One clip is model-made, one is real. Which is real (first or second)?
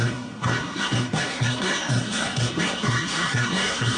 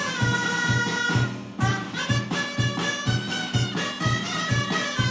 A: second